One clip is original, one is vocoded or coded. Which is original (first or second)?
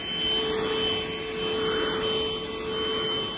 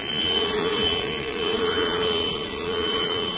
first